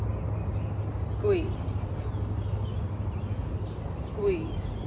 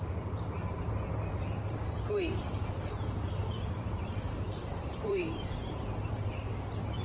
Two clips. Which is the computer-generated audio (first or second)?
second